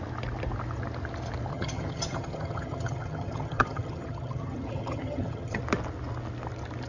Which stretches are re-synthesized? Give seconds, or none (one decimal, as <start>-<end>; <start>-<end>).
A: 1.5-5.6